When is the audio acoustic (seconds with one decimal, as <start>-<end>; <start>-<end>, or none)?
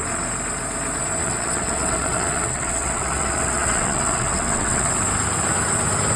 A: 0.0-1.2; 4.9-6.2